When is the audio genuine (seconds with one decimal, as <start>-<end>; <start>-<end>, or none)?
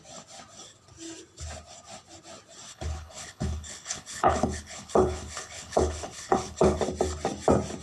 0.0-2.7; 6.8-7.8